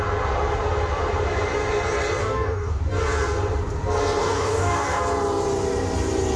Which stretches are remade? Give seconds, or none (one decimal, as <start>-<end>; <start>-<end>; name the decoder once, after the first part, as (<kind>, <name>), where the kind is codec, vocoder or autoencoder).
2.2-2.8 (codec, DAC); 4.2-5.0